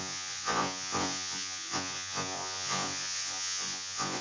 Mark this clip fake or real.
fake